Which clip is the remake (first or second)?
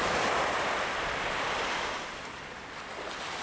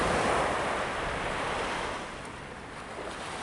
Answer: first